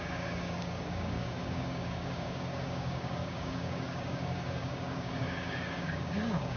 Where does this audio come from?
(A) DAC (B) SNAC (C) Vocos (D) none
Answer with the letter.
A